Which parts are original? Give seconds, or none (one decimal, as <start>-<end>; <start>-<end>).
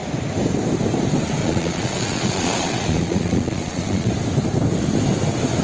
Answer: 0.0-1.4; 4.1-5.6